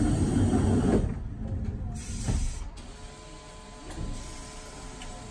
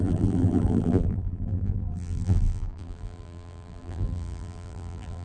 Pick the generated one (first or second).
second